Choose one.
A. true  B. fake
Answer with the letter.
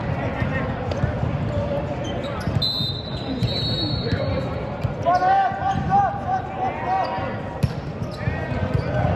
A